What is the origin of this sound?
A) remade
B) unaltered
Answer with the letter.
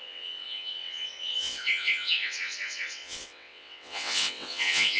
A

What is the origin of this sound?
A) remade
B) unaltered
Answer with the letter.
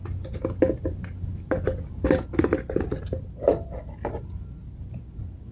B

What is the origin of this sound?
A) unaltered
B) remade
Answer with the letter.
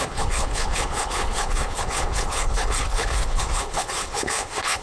B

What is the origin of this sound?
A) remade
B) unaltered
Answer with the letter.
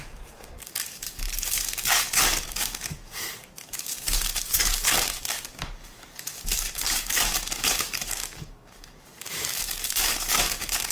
A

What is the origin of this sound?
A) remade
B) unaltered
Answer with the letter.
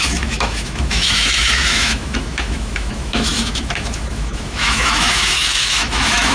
A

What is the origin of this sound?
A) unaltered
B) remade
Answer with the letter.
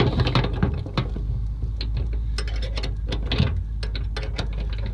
A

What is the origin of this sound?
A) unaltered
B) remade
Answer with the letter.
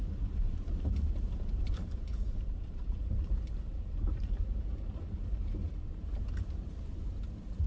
B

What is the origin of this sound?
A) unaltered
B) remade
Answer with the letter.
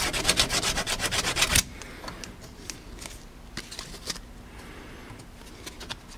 A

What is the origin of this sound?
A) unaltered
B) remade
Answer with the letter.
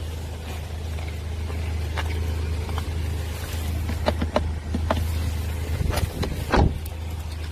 A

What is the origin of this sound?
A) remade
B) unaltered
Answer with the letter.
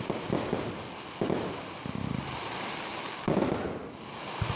B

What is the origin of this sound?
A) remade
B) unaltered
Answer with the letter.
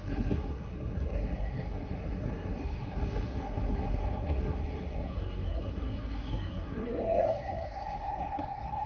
A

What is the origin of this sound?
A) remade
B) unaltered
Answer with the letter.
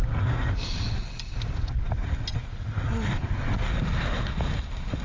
B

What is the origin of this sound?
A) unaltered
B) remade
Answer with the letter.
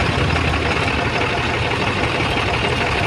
A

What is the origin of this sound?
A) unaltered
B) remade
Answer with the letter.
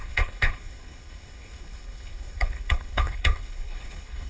B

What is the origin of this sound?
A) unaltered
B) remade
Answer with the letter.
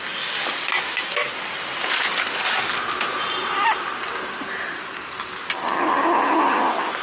A